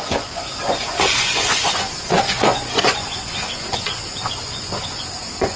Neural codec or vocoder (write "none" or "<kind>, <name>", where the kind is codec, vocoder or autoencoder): vocoder, Vocos